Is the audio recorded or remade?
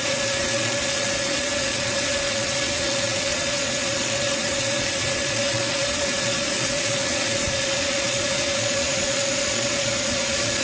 remade